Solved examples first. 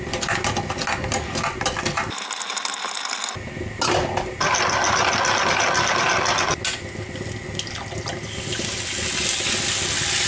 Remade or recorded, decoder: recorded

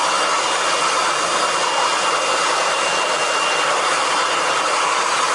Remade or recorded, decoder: recorded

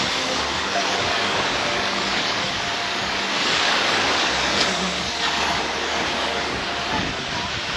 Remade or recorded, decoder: remade, codec, DAC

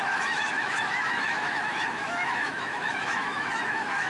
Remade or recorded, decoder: remade, autoencoder, DAC-VAE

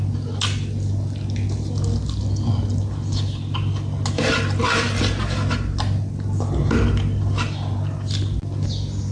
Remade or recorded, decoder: recorded